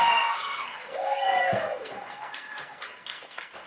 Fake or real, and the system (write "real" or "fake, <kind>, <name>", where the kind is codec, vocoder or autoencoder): fake, codec, SNAC